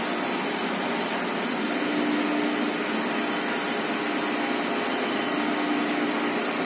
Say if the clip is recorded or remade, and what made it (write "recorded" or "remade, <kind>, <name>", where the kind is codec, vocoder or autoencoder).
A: recorded